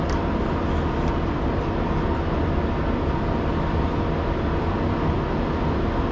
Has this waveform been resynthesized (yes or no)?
no